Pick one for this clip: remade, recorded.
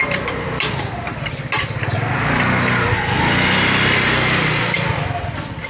recorded